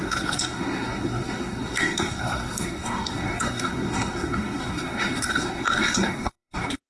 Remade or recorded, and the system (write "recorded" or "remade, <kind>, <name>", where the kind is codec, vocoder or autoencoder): remade, codec, SNAC